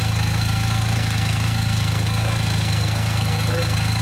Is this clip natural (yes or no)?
no